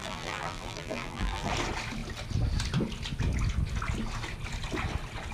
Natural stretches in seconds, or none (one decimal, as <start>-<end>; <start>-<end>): 1.5-5.3